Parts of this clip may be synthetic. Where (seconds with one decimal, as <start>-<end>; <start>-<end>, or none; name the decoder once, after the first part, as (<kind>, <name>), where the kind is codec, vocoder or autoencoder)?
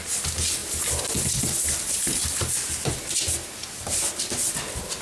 none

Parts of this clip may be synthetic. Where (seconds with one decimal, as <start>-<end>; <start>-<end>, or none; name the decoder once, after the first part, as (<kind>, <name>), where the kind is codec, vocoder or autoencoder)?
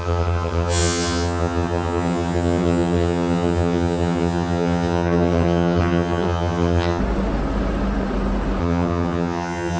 0.0-7.0 (vocoder, HiFi-GAN); 8.6-9.8